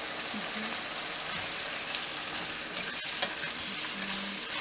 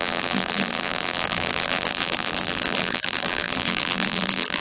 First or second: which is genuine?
first